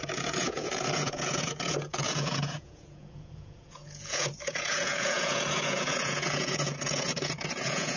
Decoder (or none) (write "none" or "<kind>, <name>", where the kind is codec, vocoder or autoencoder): vocoder, Vocos